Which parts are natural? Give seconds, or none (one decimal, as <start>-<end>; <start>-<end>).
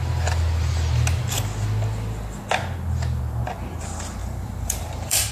0.0-4.2